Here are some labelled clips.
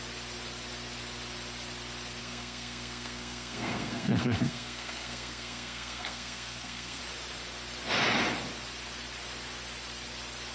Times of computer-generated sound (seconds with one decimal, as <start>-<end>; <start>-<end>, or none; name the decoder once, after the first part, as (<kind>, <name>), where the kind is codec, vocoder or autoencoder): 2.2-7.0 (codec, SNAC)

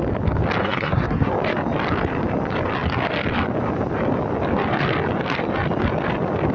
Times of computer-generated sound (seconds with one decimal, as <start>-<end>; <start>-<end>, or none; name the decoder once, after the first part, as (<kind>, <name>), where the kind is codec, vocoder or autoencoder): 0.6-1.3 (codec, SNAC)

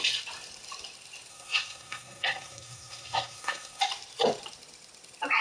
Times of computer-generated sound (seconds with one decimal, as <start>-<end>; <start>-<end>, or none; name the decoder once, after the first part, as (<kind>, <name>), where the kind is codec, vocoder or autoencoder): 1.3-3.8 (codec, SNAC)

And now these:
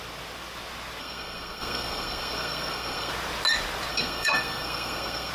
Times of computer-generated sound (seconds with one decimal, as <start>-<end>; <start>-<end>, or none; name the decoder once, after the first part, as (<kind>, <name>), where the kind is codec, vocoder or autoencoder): 1.0-3.1 (codec, SNAC); 3.9-5.3

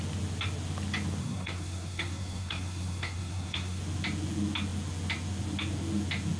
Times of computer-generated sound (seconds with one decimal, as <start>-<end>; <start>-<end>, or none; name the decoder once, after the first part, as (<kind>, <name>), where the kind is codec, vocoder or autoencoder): 1.2-3.8 (codec, SNAC)